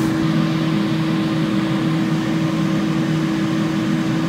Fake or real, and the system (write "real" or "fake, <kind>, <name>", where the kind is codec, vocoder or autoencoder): real